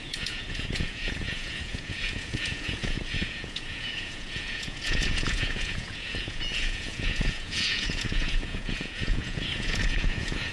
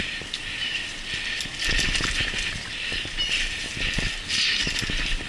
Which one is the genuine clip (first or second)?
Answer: second